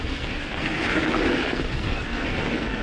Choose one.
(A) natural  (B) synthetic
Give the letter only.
B